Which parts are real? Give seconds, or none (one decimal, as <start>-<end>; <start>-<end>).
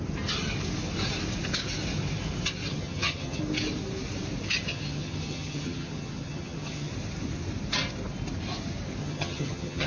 0.0-2.7; 3.4-4.7; 6.9-9.0